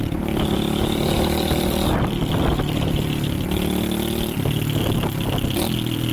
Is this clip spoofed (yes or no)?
yes